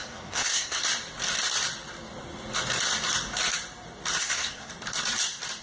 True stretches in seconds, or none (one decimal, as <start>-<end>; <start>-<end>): 0.8-4.2; 4.7-5.6